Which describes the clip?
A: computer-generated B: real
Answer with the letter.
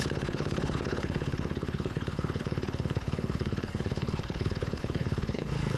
A